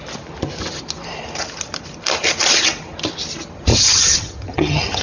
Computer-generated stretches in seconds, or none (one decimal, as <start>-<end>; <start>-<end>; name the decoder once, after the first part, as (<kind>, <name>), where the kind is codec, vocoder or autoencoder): 3.7-5.0 (vocoder, HiFi-GAN)